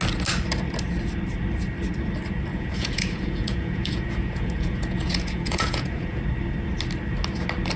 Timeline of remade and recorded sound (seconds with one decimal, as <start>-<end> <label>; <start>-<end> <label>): 0.0-2.5 recorded; 2.5-6.2 remade; 6.2-7.8 recorded